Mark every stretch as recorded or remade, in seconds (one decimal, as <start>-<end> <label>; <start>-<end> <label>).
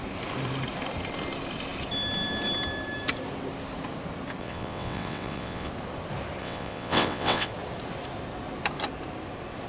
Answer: 0.0-4.4 recorded; 4.4-5.7 remade; 5.7-6.4 recorded; 6.4-7.5 remade; 7.5-9.7 recorded